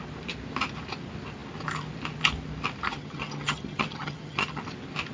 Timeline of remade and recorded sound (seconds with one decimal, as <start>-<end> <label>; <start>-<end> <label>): 0.0-2.9 recorded; 2.9-4.6 remade; 4.6-5.1 recorded